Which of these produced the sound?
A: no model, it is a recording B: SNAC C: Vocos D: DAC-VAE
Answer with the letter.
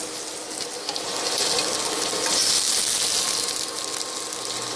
A